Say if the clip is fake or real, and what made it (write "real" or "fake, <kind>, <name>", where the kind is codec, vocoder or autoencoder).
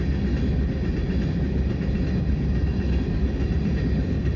real